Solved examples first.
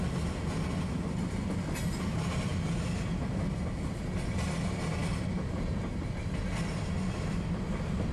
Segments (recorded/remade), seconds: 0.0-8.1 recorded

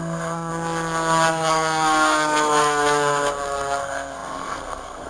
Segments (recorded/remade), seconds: 0.0-0.5 remade; 0.5-1.3 recorded; 1.3-5.1 remade

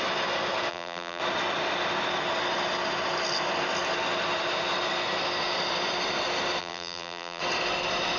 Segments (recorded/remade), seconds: 0.0-0.7 recorded; 0.7-1.2 remade; 1.2-6.6 recorded; 6.6-7.4 remade; 7.4-8.2 recorded